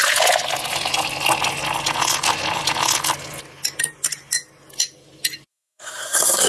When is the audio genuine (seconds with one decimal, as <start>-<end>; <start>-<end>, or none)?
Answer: 0.0-5.5